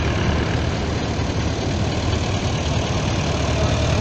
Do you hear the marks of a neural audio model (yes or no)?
no